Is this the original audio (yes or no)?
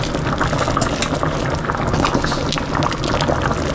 yes